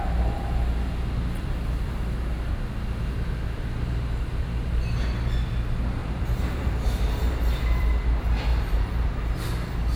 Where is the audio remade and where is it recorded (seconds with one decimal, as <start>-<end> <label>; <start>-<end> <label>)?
0.0-6.0 recorded; 6.0-7.4 remade; 7.4-8.5 recorded; 8.5-9.5 remade; 9.5-10.0 recorded